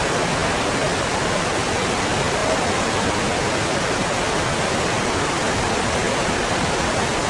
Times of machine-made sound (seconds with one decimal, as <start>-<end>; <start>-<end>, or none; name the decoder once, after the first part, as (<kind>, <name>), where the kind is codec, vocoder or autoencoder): none

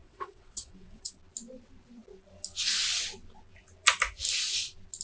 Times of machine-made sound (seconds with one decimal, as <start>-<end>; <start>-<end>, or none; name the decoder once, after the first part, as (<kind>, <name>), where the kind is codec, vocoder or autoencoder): 0.0-1.1 (vocoder, WaveNeXt)

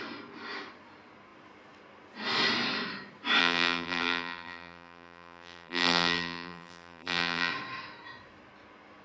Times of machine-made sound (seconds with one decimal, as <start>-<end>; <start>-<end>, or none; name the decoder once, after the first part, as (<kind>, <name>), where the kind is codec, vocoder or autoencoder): 3.4-7.5 (vocoder, BigVGAN v2)